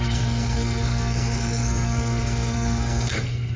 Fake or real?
fake